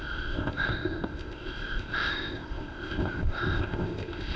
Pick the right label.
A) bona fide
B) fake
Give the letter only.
B